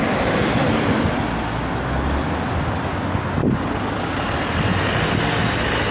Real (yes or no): yes